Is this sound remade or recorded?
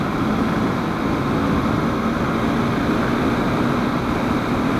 recorded